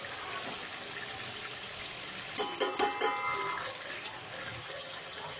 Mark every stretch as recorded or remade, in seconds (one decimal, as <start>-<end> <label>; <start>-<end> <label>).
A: 0.0-4.6 recorded; 4.6-5.4 remade